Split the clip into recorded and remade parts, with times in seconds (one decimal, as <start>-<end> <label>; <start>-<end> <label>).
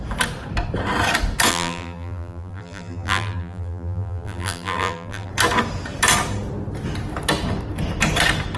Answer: 0.0-1.5 recorded; 1.5-5.3 remade; 5.3-8.6 recorded